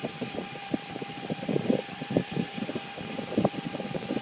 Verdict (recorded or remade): remade